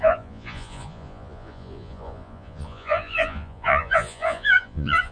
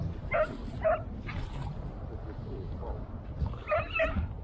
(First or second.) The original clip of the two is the second